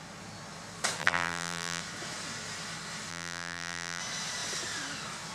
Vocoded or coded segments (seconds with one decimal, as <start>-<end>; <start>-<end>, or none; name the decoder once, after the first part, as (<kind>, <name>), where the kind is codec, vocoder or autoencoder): 1.0-1.8 (vocoder, BigVGAN v2); 3.1-4.0